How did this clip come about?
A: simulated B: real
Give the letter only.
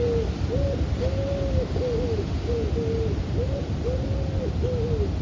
B